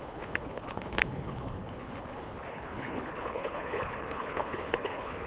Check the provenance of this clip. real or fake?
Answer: fake